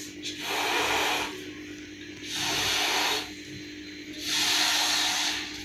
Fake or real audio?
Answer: real